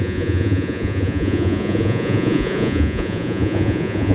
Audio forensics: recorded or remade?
remade